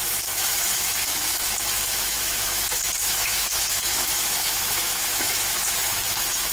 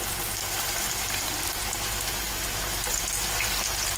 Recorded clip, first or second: second